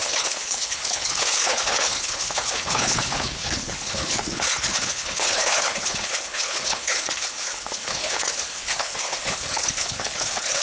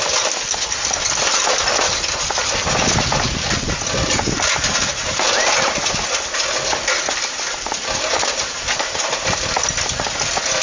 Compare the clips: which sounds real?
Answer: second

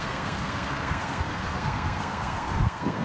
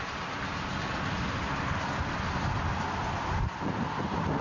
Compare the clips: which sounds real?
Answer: second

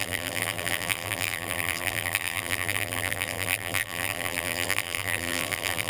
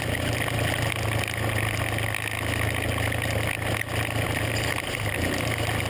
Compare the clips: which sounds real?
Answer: second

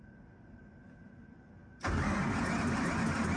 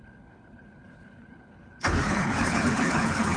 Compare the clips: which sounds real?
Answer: first